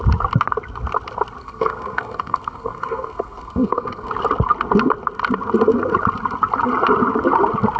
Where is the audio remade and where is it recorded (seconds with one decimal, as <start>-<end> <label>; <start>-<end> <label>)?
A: 0.0-1.4 recorded; 1.4-4.1 remade; 4.1-7.8 recorded